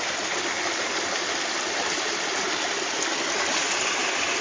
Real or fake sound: real